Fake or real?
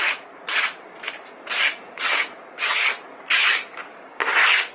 real